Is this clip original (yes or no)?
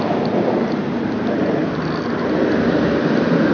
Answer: yes